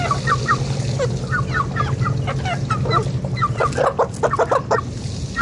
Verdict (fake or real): real